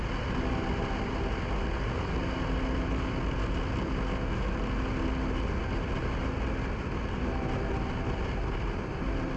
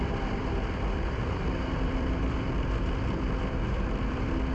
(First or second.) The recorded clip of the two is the first